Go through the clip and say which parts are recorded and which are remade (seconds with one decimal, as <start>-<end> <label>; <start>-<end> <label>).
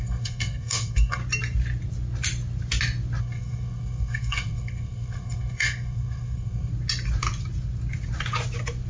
0.0-1.2 remade; 1.2-3.2 recorded; 3.2-6.7 remade; 6.7-8.9 recorded